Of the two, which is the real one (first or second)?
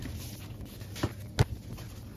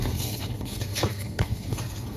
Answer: first